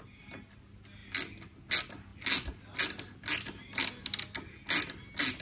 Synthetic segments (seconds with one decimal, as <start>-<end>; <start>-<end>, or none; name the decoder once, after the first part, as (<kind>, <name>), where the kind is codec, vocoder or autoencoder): none